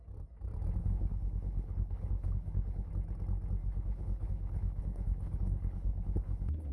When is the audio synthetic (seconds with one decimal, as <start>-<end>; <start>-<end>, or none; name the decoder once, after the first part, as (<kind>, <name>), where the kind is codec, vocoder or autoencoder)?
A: 0.8-2.9 (codec, HILCodec); 3.6-6.7